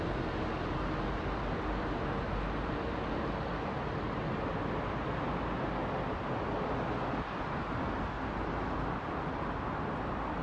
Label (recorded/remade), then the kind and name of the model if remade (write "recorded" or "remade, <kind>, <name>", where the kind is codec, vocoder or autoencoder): recorded